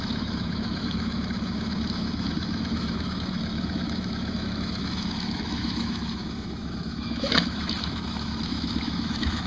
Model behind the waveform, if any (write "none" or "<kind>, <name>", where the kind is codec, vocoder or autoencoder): autoencoder, DAC-VAE